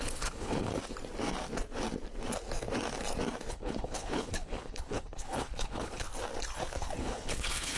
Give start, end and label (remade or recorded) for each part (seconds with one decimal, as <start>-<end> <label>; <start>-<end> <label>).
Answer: 0.0-0.8 remade; 0.8-3.5 recorded; 3.5-6.1 remade; 6.1-7.0 recorded; 7.0-7.8 remade